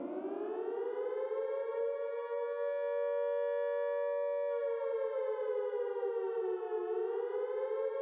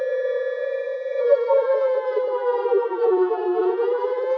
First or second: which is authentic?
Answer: first